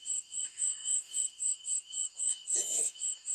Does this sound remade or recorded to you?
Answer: remade